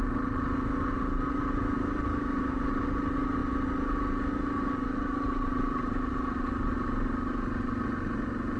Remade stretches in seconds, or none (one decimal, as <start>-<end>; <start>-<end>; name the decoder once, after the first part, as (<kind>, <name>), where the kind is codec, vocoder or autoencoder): 2.1-2.6 (autoencoder, DAC-VAE)